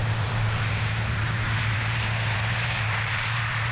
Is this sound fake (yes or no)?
yes